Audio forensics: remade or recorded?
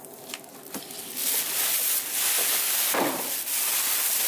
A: recorded